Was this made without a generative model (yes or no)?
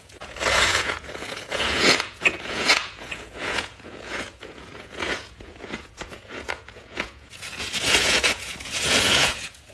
no